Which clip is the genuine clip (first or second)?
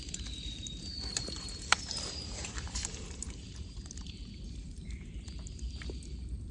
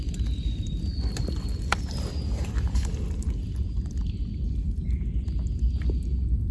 second